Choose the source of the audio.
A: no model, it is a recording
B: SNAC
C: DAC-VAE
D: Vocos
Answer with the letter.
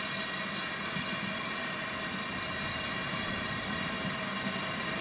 A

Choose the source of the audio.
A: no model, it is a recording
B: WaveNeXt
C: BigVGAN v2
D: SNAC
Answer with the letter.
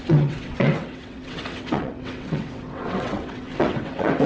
B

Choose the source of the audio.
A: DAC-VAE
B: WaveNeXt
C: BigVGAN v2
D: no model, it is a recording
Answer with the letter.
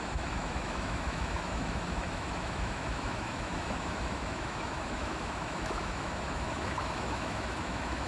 A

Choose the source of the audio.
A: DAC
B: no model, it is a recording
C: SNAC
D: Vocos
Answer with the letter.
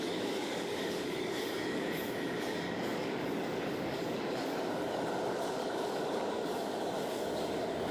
A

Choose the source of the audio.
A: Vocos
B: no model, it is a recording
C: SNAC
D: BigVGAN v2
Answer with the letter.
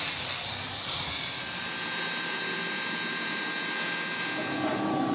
B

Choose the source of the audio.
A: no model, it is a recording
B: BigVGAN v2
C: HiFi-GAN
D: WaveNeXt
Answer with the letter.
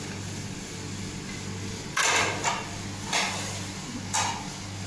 A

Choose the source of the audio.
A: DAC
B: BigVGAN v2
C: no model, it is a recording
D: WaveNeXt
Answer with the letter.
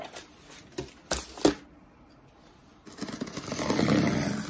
C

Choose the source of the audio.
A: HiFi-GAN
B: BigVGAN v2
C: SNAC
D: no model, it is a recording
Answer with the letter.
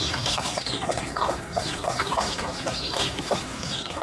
C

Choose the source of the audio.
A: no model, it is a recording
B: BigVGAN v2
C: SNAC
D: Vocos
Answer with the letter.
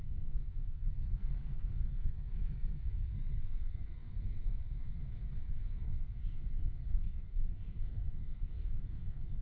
C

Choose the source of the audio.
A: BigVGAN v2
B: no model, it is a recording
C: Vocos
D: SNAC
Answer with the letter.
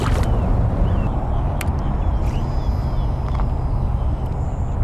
B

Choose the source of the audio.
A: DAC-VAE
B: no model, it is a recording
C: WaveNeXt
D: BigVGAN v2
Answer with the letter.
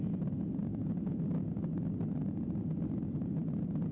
B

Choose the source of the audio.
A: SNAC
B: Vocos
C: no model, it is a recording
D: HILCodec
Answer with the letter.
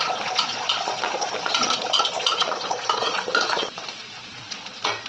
B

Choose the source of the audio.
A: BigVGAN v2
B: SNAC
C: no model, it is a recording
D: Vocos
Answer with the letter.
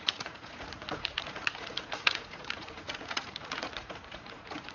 D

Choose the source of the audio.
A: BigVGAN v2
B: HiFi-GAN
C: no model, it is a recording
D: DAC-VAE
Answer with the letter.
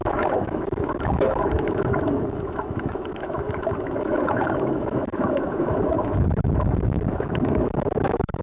D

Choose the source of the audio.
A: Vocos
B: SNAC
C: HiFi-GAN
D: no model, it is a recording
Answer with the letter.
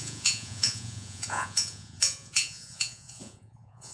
A